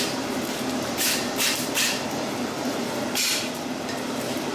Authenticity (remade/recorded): remade